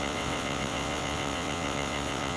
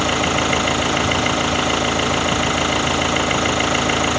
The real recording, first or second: second